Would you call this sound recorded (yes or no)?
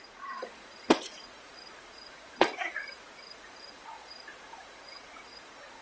no